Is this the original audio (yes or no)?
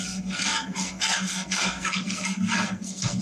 no